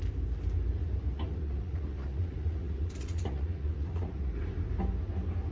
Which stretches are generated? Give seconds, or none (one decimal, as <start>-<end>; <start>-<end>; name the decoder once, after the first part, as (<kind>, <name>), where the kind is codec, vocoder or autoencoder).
1.1-4.4 (vocoder, Vocos)